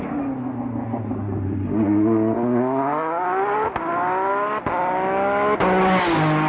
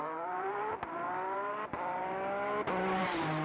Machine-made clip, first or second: second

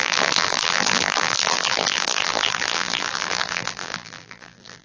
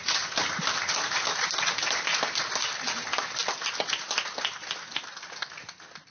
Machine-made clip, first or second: first